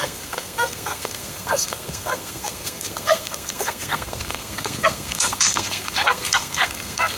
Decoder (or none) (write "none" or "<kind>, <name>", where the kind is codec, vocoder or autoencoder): codec, SNAC